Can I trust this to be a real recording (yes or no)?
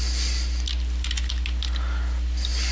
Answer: yes